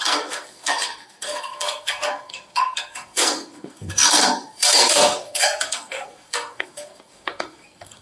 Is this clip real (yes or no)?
no